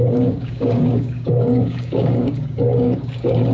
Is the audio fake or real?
fake